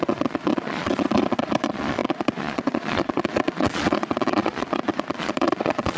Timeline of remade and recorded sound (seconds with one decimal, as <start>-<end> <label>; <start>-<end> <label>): 0.0-6.0 remade